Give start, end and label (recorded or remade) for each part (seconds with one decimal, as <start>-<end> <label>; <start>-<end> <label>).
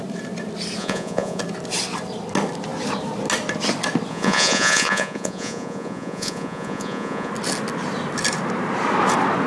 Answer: 0.0-0.8 recorded; 0.8-1.4 remade; 1.4-4.1 recorded; 4.1-7.3 remade; 7.3-9.5 recorded